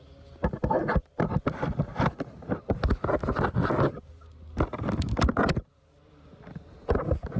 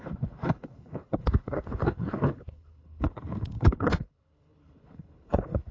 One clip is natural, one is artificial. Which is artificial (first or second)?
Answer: second